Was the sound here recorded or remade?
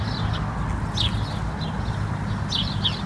recorded